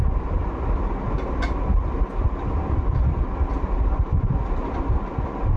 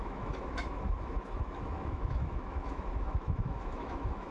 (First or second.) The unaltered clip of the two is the first